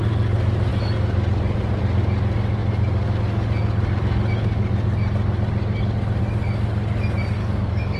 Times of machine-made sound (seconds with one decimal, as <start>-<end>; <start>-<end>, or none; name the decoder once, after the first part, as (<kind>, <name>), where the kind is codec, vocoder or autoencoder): 7.4-8.0 (codec, DAC)